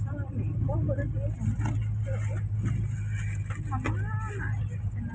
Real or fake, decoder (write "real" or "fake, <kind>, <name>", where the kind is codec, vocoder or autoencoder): real